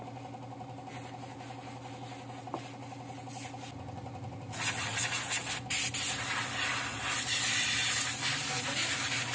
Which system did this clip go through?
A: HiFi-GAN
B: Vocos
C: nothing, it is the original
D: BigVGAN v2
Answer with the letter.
C